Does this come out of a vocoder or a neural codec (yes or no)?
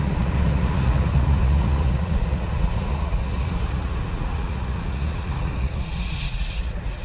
yes